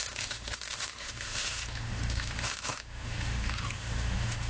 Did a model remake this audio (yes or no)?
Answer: yes